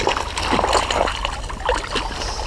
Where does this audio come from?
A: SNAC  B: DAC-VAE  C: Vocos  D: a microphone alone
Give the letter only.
D